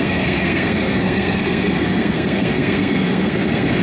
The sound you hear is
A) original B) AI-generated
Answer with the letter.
B